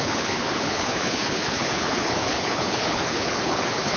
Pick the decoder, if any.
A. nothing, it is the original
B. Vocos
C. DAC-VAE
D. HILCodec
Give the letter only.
D